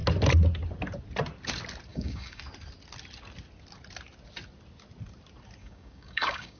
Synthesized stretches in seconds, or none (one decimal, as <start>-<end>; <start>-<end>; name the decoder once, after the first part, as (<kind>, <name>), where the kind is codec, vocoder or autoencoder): 1.9-2.4 (codec, DAC); 5.6-6.6